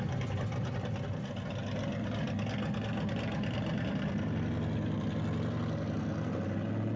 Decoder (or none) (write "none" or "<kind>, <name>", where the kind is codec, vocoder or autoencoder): none